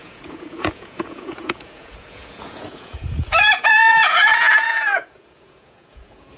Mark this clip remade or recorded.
remade